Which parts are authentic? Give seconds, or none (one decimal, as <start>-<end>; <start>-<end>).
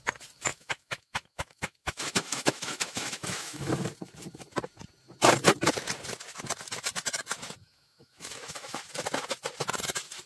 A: 0.0-0.5; 3.7-7.6; 8.8-10.3